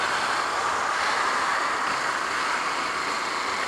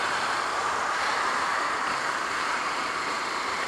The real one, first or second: first